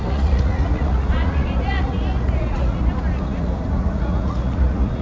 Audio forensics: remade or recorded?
remade